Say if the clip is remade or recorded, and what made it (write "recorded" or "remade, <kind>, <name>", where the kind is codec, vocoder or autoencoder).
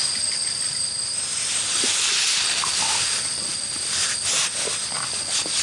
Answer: recorded